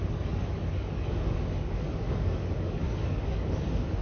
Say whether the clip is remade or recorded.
remade